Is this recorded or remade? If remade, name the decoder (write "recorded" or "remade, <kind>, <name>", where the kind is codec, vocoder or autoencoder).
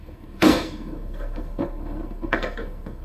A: remade, codec, SNAC